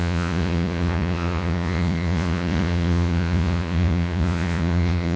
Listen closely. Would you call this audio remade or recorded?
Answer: remade